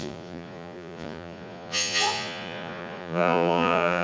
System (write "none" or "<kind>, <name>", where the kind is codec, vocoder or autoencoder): vocoder, Vocos